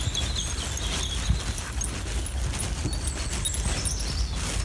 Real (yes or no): yes